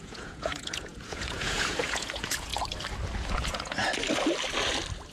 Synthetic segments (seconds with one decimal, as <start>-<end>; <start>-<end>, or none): 0.0-2.5; 3.3-3.8